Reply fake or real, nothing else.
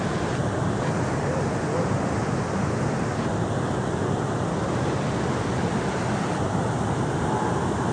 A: real